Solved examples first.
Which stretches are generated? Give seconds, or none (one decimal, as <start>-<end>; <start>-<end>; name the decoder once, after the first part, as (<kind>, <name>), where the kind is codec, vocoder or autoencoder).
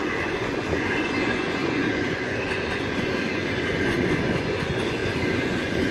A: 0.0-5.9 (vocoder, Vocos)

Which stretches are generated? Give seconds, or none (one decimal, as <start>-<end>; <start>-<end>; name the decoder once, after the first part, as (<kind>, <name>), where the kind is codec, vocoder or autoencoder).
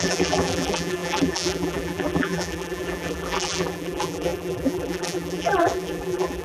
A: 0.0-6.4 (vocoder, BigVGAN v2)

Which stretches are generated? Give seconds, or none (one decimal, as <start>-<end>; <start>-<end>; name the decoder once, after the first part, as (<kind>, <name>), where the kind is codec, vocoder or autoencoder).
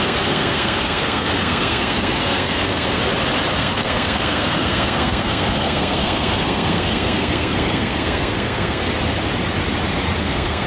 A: 0.0-3.0 (codec, SNAC); 3.6-8.8; 10.2-10.7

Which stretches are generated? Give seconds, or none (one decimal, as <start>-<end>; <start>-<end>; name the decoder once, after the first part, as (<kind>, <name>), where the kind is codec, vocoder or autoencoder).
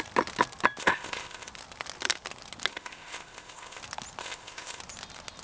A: 0.8-1.5 (codec, ZipCodec); 2.7-3.8; 4.2-4.8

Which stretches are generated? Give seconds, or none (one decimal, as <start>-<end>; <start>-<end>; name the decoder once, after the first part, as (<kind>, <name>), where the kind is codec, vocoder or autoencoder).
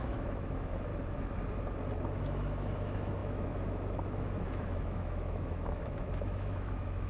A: 0.0-0.9 (autoencoder, DAC-VAE); 2.2-7.1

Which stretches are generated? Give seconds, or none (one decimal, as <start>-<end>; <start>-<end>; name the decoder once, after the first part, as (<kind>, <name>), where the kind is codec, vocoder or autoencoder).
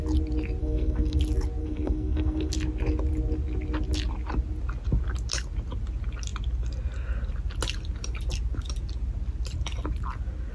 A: 0.6-1.2 (codec, SNAC); 1.6-2.5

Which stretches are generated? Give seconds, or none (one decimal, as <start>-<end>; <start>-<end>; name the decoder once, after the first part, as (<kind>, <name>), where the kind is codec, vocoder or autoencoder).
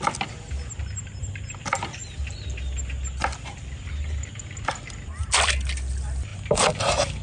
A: none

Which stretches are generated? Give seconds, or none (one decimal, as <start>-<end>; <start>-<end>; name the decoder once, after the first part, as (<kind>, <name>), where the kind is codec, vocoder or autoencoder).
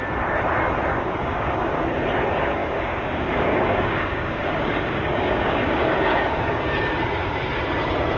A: 0.9-1.7 (codec, DAC); 2.6-6.6